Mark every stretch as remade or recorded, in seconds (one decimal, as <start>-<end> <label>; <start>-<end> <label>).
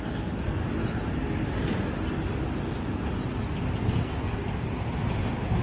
0.0-0.6 remade; 0.6-4.0 recorded; 4.0-4.4 remade; 4.4-5.6 recorded